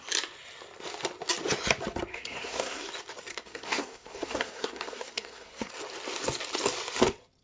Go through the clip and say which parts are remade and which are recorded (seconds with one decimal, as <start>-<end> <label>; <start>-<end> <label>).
0.0-2.1 recorded; 2.1-2.9 remade; 2.9-3.3 recorded; 3.3-5.7 remade; 5.7-7.4 recorded